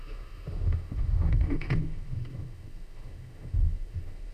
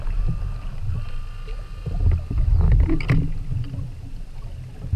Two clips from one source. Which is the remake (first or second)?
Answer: first